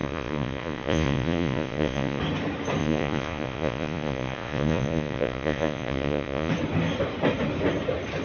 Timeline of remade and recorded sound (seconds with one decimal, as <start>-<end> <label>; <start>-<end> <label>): 0.0-2.2 remade; 2.2-2.8 recorded; 2.8-6.5 remade; 6.5-8.2 recorded